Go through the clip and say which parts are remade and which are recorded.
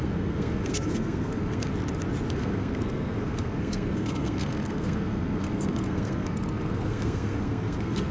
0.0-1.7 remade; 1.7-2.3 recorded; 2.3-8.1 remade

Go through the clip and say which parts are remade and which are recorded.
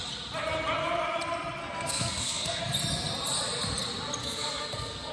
0.0-1.6 recorded; 1.6-2.6 remade; 2.6-4.2 recorded; 4.2-5.1 remade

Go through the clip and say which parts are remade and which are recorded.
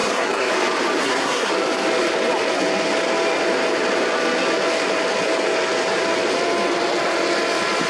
0.0-0.5 remade; 0.5-1.0 recorded; 1.0-1.5 remade; 1.5-7.9 recorded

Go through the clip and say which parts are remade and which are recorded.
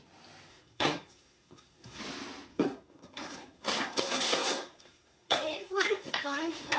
0.0-0.5 recorded; 0.5-2.0 remade; 2.0-2.5 recorded; 2.5-6.8 remade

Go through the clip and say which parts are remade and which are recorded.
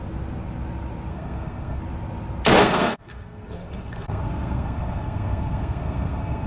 0.0-1.1 recorded; 1.1-1.8 remade; 1.8-2.6 recorded; 2.6-6.5 remade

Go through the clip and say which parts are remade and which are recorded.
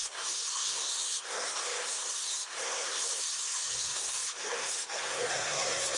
0.0-6.0 remade